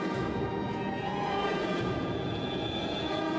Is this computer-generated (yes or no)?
yes